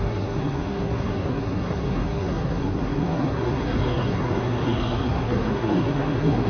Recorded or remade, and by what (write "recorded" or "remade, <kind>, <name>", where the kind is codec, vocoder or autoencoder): remade, codec, SNAC